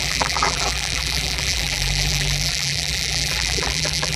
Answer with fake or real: fake